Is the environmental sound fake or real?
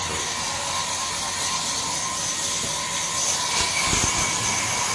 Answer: real